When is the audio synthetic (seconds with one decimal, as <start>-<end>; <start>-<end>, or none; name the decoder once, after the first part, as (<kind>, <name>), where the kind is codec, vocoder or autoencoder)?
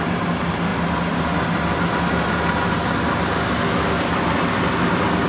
none